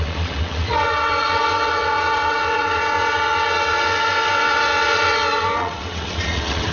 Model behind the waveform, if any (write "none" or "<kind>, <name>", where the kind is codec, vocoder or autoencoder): vocoder, WaveNeXt